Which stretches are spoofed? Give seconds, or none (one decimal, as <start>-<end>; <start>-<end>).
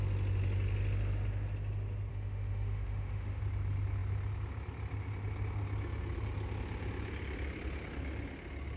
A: 2.1-3.4